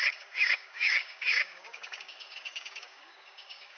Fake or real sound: fake